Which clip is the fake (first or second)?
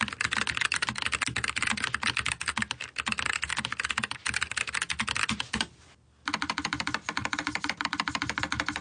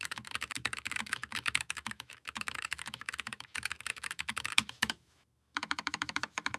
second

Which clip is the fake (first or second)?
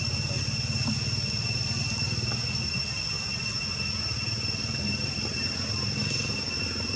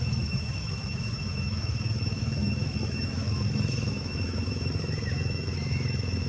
second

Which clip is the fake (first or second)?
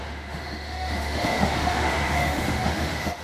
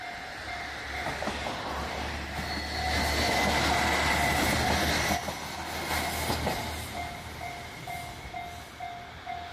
first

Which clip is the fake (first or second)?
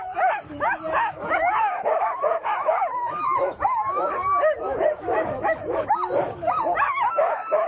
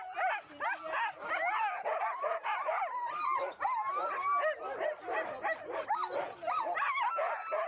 first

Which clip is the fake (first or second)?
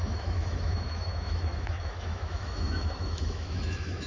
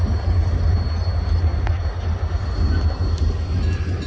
first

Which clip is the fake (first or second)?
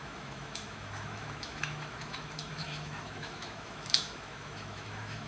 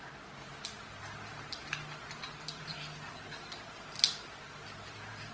first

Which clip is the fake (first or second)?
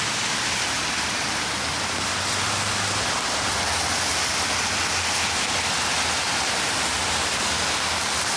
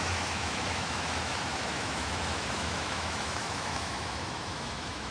second